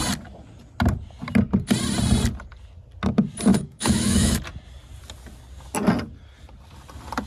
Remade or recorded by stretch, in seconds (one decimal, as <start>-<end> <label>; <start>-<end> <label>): 0.0-3.5 recorded; 3.5-4.4 remade; 4.4-7.3 recorded